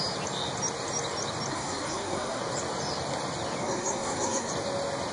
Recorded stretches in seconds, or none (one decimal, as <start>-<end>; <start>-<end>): 0.0-1.5; 2.4-3.6; 4.5-5.1